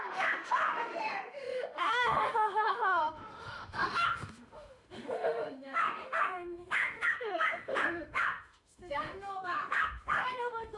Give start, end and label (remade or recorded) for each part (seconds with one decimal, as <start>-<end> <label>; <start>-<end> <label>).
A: 0.0-10.8 remade